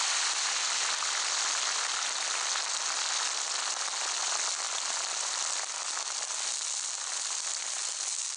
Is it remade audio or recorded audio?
recorded